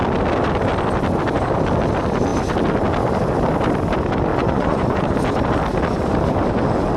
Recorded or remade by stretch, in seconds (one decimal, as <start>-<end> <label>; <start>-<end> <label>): 0.0-4.3 recorded; 4.3-5.0 remade; 5.0-7.0 recorded